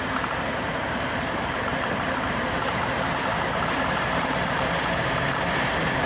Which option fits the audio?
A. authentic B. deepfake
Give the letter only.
B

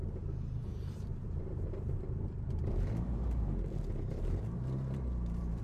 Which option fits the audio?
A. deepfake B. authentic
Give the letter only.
A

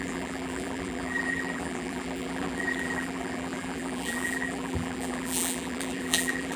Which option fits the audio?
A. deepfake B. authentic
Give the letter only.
A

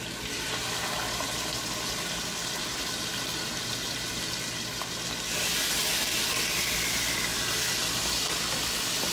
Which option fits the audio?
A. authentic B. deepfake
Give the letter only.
A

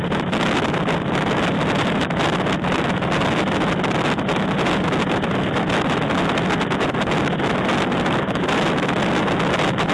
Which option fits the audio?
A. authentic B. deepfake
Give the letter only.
A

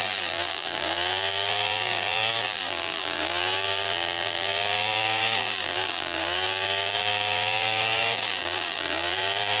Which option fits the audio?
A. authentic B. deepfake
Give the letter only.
B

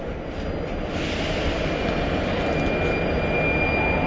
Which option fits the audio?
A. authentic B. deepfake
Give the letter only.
A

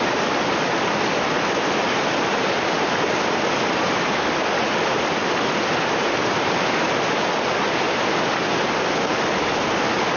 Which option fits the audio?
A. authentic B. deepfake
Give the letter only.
A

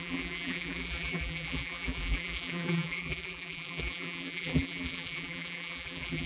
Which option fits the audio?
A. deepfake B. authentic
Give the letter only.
A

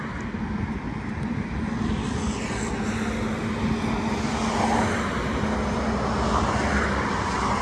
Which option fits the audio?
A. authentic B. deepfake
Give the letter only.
A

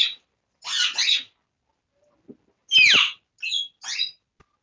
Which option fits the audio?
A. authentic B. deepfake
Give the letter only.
A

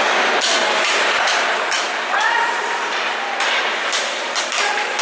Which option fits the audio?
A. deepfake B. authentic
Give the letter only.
A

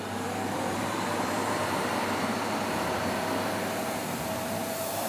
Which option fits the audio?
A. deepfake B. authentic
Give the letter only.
A